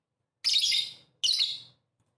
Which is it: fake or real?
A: real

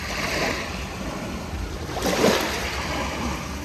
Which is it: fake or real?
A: real